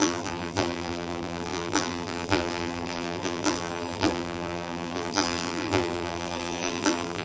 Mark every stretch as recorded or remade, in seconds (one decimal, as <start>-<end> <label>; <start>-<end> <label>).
0.0-7.2 remade